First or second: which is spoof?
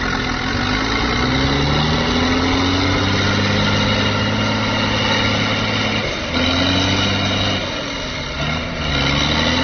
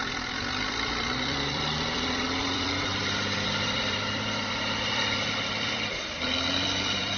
second